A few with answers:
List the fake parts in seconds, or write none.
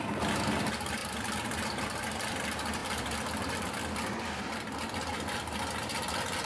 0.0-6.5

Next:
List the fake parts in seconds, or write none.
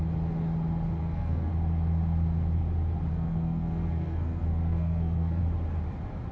1.0-1.5; 3.1-5.4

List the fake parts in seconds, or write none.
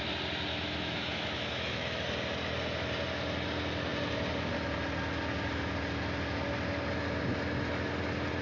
0.5-2.1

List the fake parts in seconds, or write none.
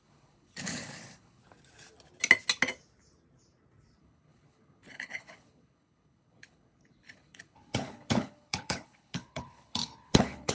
0.0-1.4; 4.0-10.5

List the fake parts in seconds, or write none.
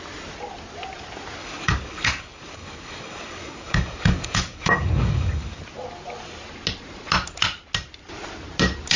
1.4-5.6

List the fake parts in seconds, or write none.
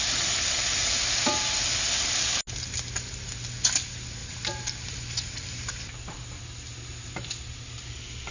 4.2-5.7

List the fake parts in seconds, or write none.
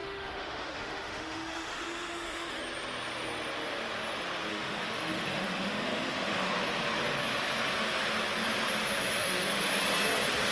0.0-2.6; 4.5-6.5; 9.2-9.8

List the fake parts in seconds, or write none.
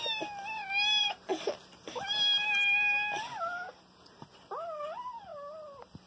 none